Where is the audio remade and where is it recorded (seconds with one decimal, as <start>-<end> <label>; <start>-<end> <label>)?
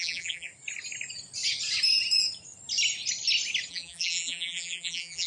0.0-0.5 remade; 0.5-3.7 recorded; 3.7-5.3 remade